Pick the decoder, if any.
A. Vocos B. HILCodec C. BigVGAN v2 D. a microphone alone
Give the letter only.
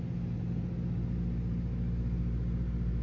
D